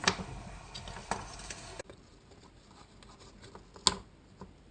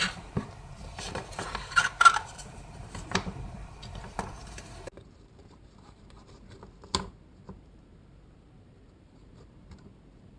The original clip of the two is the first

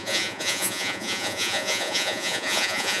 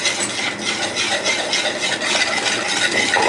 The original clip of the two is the second